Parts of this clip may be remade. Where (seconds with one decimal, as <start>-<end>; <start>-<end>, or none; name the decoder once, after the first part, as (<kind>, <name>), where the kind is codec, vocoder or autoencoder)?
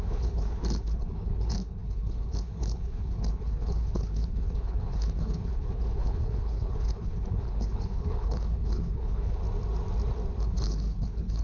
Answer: 0.0-9.4 (codec, HILCodec); 10.4-11.4